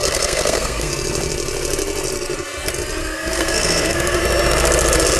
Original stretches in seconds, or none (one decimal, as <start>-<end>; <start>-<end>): 0.9-3.0; 4.2-5.2